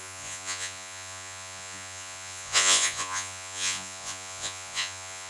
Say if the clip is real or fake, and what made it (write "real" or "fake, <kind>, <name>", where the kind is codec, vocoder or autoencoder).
fake, vocoder, Vocos